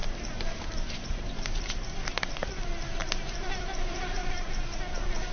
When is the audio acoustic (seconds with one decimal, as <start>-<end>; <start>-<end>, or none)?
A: 1.6-3.0; 4.4-5.3